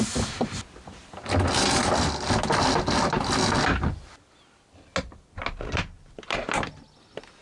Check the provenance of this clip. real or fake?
real